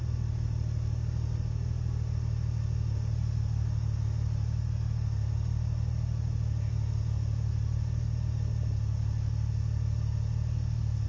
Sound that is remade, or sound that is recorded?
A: recorded